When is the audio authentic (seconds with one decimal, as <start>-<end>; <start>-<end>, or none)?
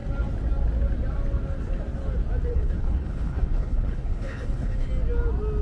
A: 0.0-2.5; 4.9-5.6